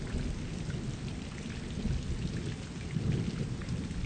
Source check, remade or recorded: recorded